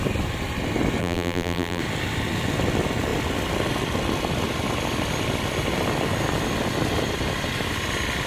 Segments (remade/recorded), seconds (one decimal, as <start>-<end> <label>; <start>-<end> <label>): 0.0-1.0 recorded; 1.0-1.8 remade; 1.8-8.3 recorded